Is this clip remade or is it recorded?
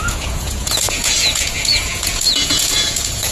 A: remade